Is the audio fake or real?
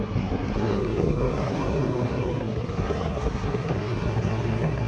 fake